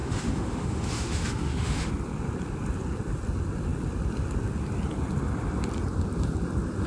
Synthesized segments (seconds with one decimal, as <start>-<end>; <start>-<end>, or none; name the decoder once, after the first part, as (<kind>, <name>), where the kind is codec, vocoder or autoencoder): 0.0-1.9 (autoencoder, DAC-VAE)